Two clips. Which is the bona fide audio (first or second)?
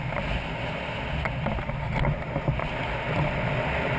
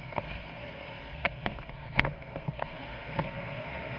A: first